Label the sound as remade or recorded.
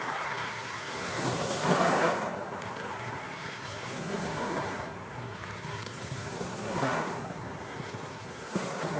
remade